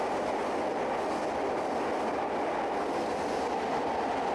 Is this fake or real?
real